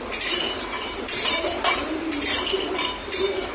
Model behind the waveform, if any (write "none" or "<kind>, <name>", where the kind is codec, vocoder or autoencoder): vocoder, BigVGAN v2